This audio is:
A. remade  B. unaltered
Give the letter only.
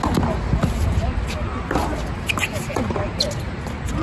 B